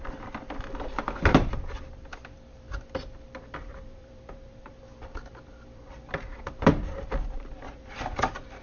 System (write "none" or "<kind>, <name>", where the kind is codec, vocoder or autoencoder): vocoder, BigVGAN v2